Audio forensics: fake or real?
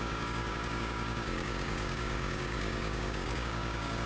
fake